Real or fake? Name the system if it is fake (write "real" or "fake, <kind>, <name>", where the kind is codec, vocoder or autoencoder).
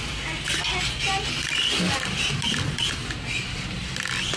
real